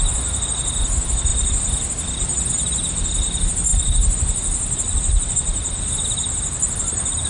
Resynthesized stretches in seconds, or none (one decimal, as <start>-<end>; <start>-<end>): none